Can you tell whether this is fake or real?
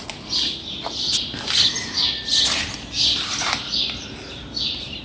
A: real